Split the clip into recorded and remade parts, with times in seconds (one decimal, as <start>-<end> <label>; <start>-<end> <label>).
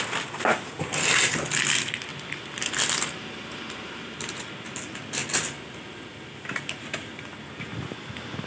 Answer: 0.0-8.5 recorded